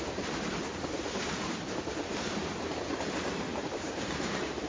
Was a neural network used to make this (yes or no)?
yes